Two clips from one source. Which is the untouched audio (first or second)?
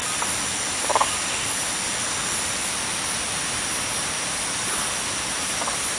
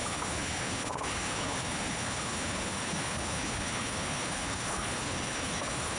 first